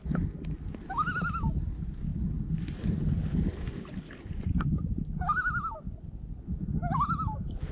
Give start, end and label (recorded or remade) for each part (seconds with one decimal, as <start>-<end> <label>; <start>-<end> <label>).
0.0-7.7 recorded